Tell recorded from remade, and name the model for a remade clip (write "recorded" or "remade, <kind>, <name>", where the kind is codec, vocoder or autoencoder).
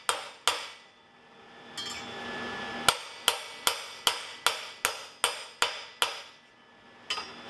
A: recorded